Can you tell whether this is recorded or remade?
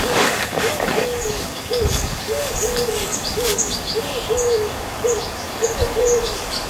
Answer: remade